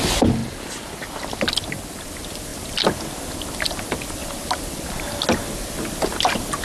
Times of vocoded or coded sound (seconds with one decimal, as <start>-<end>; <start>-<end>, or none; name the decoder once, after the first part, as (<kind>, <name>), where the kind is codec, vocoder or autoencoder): none